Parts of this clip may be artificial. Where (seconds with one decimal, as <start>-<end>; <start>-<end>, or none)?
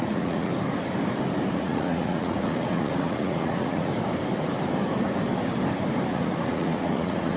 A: 0.0-0.5; 1.5-3.9; 6.1-7.4